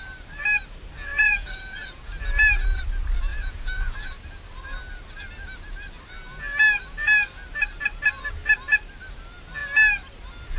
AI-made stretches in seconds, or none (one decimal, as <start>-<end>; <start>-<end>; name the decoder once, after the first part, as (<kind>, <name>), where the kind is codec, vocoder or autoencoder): 1.1-2.1 (vocoder, Vocos); 3.3-3.9